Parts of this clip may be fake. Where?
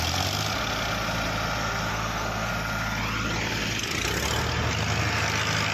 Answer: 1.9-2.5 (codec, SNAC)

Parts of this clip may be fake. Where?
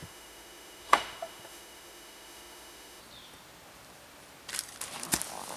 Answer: 0.0-3.0 (autoencoder, DAC-VAE)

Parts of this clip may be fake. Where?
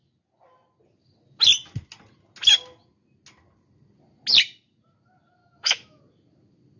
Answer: 5.4-6.0 (autoencoder, DAC-VAE)